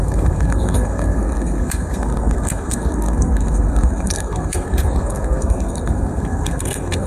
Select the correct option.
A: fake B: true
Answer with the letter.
A